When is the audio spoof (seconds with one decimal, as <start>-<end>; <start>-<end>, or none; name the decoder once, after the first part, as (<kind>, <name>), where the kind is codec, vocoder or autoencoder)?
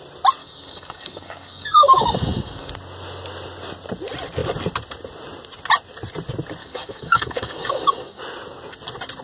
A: 0.4-2.7 (codec, DAC); 6.6-8.2